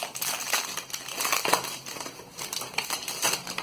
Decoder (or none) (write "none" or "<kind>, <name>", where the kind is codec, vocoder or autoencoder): none